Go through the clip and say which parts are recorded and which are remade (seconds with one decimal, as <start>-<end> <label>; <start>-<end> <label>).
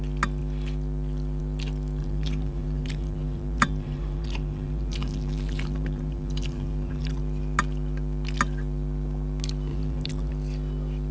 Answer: 0.0-2.0 recorded; 2.0-7.2 remade; 7.2-9.7 recorded; 9.7-10.3 remade; 10.3-11.1 recorded